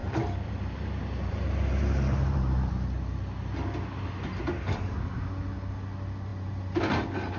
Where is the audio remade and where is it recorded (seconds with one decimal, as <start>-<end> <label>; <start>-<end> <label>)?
0.0-2.7 remade; 2.7-6.3 recorded; 6.3-6.8 remade; 6.8-7.4 recorded